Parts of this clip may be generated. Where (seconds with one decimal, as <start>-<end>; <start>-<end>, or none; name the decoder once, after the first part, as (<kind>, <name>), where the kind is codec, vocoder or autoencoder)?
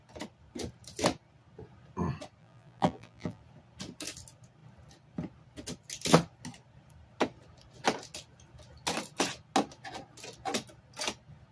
2.4-3.4 (vocoder, BigVGAN v2)